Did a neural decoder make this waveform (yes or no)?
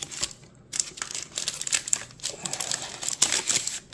no